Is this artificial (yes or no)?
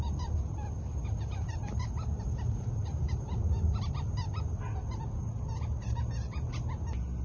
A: no